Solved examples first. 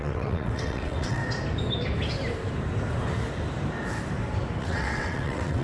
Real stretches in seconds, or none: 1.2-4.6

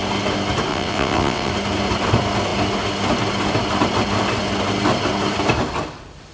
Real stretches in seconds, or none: 0.0-0.7; 1.5-6.3

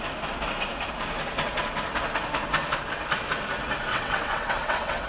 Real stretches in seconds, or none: 0.0-3.9

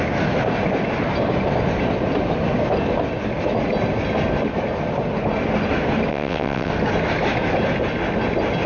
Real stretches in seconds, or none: 0.0-6.1; 6.7-8.7

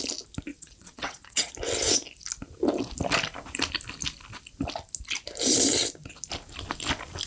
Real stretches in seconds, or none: 0.0-0.5; 1.5-7.3

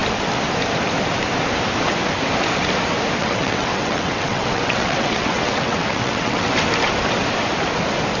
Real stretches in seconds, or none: 0.0-3.2; 6.5-8.2

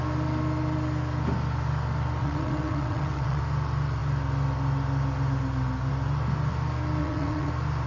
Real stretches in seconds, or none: 0.0-2.2; 3.4-7.0; 7.5-7.9

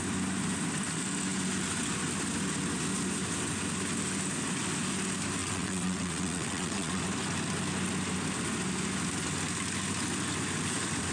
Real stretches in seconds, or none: 0.0-5.4; 7.0-11.1